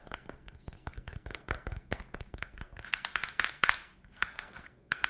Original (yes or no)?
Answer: no